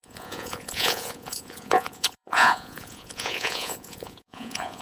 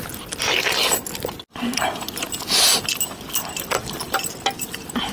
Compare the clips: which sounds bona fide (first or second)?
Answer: second